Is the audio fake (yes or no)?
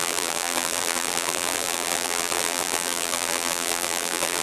yes